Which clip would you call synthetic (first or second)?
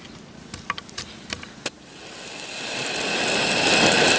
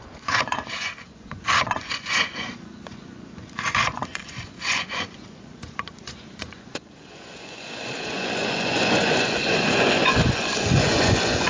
second